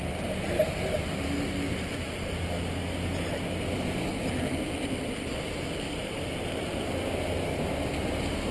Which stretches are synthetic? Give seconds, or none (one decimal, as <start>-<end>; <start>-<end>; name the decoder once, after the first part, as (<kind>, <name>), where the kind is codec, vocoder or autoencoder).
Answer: none